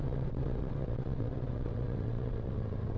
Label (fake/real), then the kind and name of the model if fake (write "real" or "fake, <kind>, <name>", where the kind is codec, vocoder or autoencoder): fake, vocoder, WaveNeXt